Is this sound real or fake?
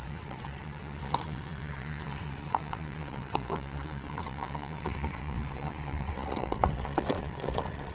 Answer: fake